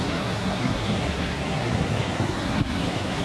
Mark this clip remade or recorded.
remade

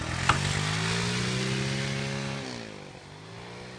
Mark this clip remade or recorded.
recorded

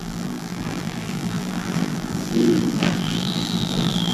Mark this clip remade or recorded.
remade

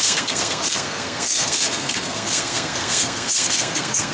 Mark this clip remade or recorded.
remade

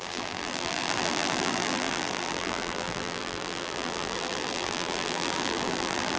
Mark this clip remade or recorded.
remade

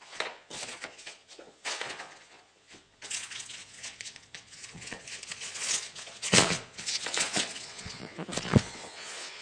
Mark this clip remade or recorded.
remade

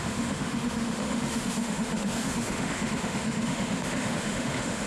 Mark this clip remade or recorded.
remade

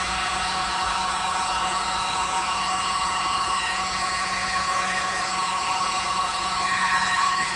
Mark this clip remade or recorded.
remade